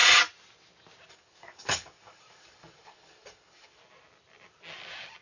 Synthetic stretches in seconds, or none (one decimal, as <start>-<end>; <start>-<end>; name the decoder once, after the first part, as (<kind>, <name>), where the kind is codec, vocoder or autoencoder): 1.1-3.8 (codec, DAC)